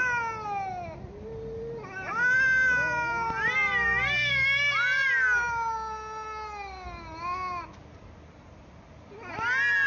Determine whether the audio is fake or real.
real